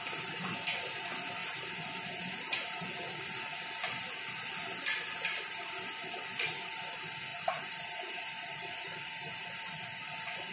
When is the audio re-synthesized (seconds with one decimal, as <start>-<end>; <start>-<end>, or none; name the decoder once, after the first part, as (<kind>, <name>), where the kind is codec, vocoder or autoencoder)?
1.4-2.9 (vocoder, BigVGAN v2); 7.3-9.6